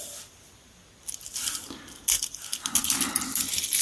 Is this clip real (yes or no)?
yes